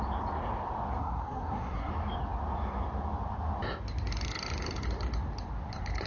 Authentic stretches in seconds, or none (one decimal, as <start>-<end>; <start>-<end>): 0.0-1.0; 1.9-6.1